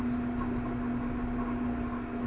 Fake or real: real